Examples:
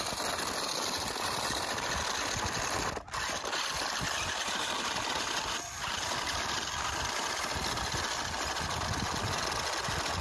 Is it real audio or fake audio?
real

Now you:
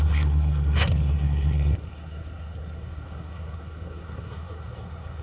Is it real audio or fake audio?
fake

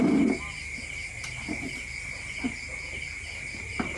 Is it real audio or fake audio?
real